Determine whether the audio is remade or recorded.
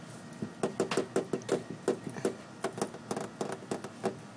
recorded